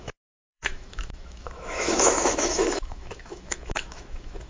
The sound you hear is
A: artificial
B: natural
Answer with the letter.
A